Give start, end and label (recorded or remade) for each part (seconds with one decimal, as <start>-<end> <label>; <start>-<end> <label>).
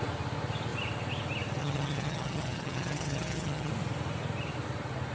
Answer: 0.0-1.6 recorded; 1.6-3.7 remade; 3.7-5.1 recorded